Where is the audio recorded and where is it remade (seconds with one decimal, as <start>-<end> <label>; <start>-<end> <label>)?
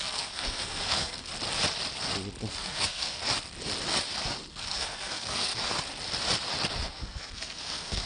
0.0-1.3 remade; 1.3-2.6 recorded; 2.6-3.2 remade; 3.2-4.5 recorded; 4.5-5.5 remade; 5.5-6.9 recorded; 6.9-8.1 remade